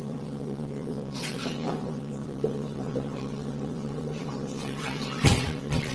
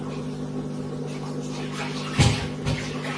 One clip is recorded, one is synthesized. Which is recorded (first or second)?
second